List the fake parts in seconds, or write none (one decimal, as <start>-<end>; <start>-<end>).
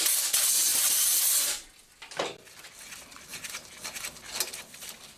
none